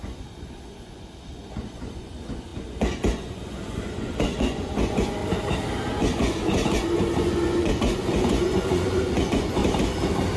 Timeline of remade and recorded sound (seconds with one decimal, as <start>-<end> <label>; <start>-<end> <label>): 0.0-5.2 remade; 5.2-6.0 recorded; 6.0-9.6 remade; 9.6-10.4 recorded

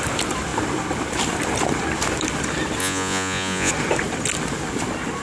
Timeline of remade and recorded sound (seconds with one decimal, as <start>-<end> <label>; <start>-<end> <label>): 0.0-2.8 recorded; 2.8-3.7 remade; 3.7-5.2 recorded